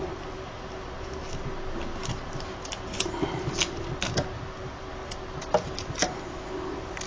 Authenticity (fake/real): real